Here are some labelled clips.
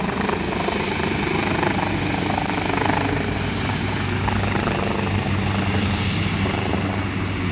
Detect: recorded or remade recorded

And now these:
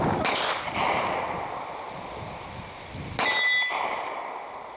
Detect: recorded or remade recorded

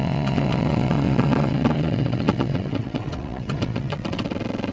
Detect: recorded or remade remade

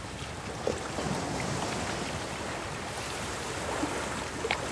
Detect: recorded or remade recorded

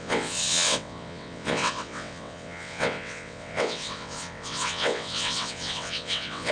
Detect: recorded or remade remade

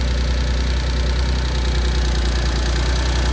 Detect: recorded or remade recorded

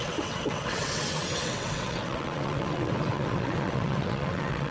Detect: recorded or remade remade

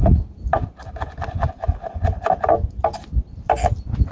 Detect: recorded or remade recorded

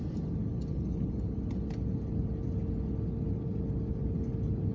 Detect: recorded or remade recorded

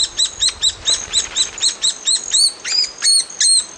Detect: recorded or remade recorded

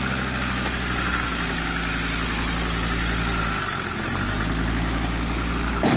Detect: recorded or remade recorded